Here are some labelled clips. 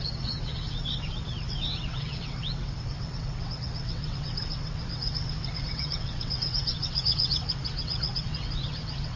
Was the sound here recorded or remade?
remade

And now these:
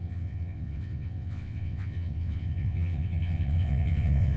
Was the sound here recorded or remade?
remade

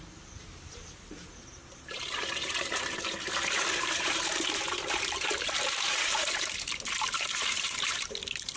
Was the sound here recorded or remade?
remade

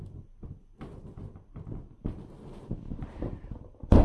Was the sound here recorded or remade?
recorded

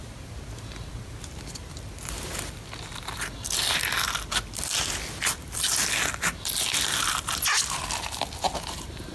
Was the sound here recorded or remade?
recorded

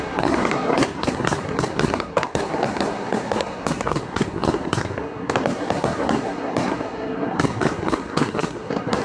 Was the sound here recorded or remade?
remade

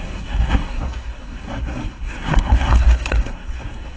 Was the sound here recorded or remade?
remade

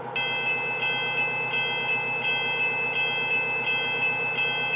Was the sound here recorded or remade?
recorded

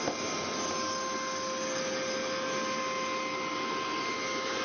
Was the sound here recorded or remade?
recorded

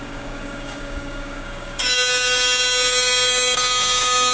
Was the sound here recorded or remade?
remade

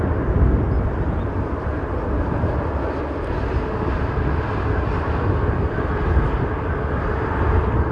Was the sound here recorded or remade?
recorded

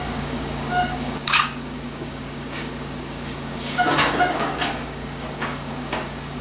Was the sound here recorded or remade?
remade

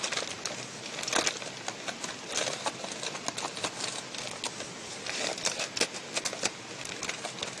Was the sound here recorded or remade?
recorded